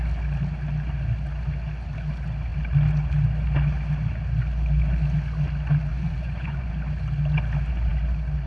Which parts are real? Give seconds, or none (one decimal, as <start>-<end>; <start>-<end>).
0.0-5.9; 6.7-8.5